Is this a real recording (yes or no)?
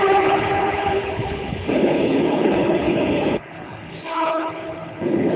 no